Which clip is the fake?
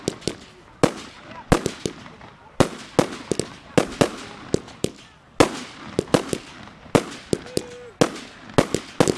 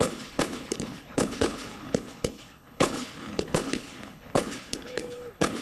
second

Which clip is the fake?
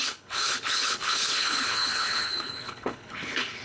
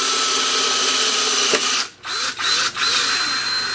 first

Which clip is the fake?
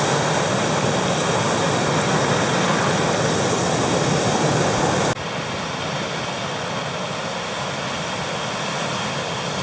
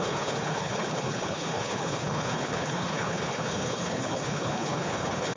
second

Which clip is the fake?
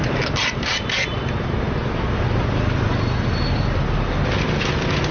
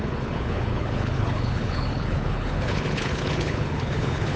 second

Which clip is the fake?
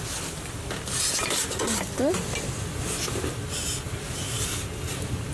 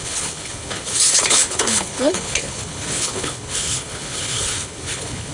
second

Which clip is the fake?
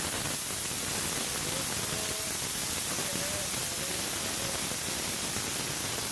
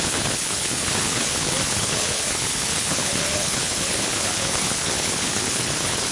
second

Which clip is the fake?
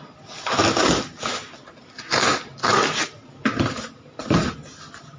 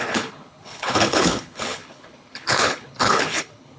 second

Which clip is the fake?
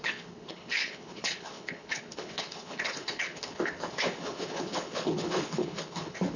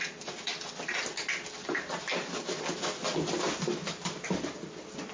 first